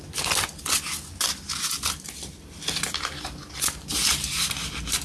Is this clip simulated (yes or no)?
no